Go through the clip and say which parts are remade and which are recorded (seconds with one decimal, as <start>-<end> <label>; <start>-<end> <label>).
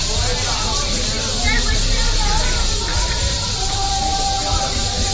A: 0.0-3.3 recorded; 3.3-4.6 remade; 4.6-5.1 recorded